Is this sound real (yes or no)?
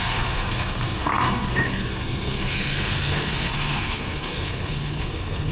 no